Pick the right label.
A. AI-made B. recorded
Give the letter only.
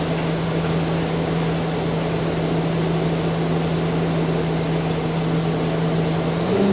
B